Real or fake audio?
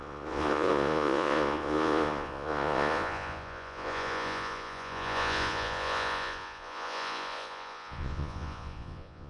fake